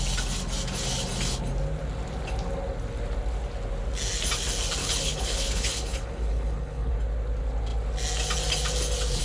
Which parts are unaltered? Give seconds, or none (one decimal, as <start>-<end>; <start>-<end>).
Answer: 0.0-4.8; 6.9-9.2